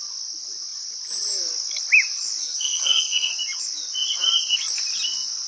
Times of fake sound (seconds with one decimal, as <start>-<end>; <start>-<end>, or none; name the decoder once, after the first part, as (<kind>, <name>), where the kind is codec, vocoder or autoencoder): 2.4-3.3 (codec, SNAC)